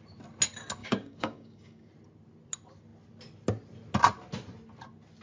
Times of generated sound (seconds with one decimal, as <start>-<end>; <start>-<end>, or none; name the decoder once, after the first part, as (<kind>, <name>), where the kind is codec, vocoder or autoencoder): 0.8-1.9 (codec, DAC)